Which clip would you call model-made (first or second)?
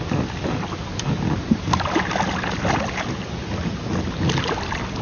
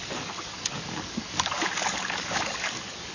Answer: second